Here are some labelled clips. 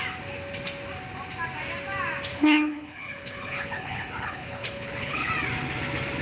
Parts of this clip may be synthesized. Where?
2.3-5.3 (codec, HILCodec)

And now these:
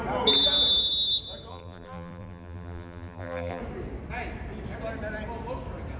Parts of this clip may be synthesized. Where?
1.5-3.6 (vocoder, BigVGAN v2)

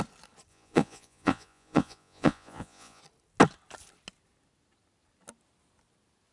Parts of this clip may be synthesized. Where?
0.5-3.0 (vocoder, Vocos)

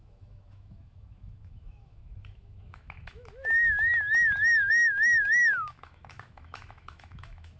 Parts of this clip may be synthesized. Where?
0.0-3.9 (autoencoder, DAC-VAE); 4.7-7.6

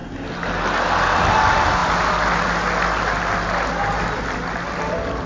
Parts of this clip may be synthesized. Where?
none

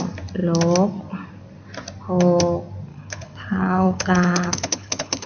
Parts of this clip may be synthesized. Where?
2.9-5.3 (codec, HILCodec)

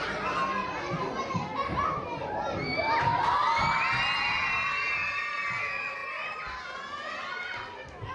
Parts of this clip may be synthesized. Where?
none